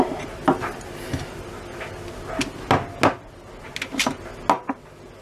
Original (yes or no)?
yes